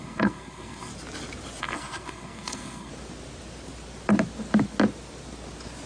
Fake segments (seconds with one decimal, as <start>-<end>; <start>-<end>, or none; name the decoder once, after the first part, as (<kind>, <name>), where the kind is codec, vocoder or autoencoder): 0.0-0.9 (codec, SNAC); 1.6-2.9